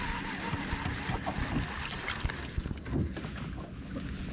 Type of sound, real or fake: real